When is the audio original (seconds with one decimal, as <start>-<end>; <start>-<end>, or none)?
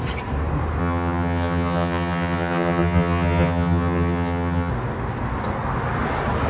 0.0-0.8; 4.7-6.5